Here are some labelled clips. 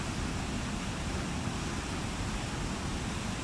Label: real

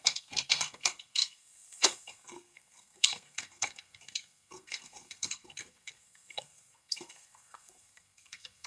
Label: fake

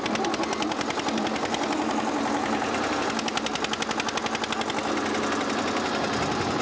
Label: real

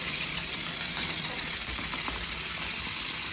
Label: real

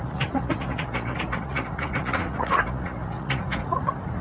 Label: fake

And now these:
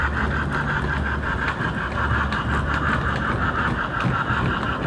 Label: real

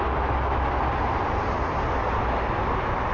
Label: real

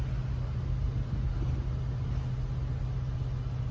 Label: real